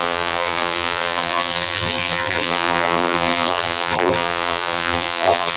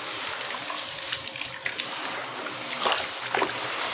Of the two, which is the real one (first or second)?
second